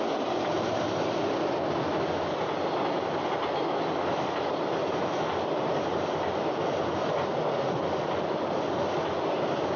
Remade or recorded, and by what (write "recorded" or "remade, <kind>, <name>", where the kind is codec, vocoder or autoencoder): recorded